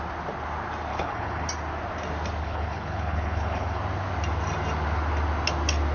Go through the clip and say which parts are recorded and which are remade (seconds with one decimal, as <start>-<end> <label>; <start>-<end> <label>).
0.0-0.9 recorded; 0.9-1.5 remade; 1.5-2.4 recorded; 2.4-3.8 remade; 3.8-5.9 recorded